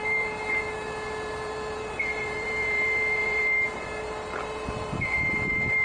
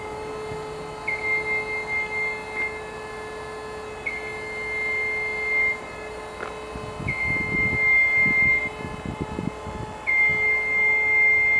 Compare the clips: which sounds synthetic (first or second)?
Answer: first